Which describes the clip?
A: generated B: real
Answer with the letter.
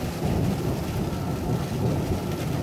B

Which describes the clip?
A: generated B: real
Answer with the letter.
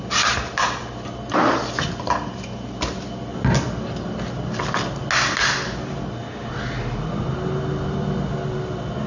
B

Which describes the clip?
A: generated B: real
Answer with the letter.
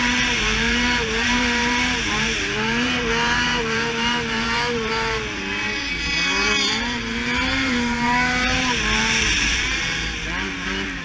A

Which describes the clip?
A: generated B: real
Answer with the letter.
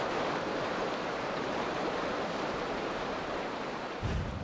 A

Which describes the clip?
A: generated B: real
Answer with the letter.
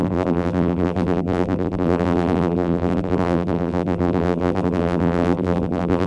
A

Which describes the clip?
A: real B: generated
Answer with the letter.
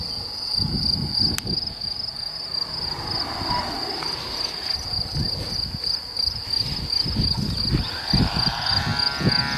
A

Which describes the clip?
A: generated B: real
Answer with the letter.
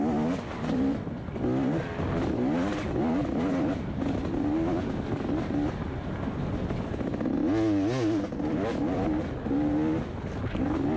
B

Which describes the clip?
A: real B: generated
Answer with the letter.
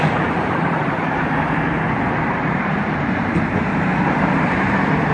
B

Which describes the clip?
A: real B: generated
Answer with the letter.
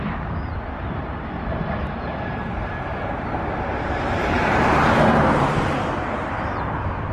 B